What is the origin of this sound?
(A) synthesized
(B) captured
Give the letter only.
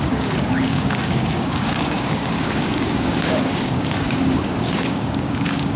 A